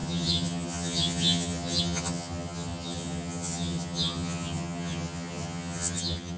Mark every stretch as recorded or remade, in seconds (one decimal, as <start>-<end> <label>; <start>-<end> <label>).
0.0-6.4 remade